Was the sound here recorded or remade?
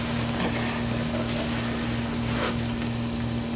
recorded